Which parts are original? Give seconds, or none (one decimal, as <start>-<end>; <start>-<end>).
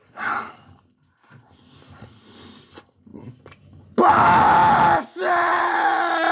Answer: 0.0-6.3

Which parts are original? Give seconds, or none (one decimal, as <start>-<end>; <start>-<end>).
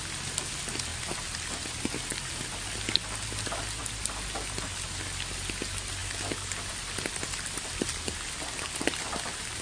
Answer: 0.0-9.6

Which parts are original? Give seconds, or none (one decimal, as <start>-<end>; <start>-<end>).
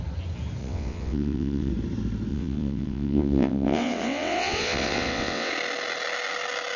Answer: 0.0-0.6; 1.7-2.3; 5.5-6.8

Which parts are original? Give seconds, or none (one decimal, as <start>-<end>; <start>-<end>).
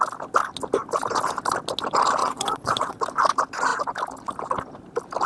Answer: 0.0-2.2; 3.0-5.3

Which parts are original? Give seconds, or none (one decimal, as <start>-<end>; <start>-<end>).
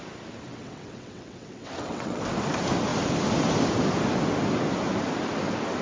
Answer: 0.0-0.5; 2.2-5.8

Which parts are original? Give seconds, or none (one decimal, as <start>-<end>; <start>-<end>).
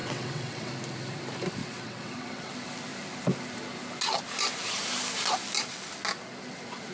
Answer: 0.7-1.6; 2.5-6.9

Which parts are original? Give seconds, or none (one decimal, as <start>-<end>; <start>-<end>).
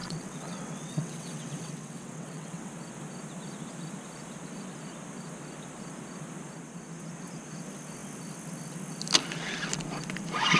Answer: 2.7-10.6